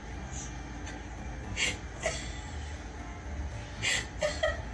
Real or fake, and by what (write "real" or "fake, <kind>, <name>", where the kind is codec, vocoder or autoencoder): real